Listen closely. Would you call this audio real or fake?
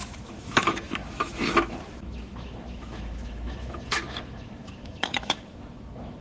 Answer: fake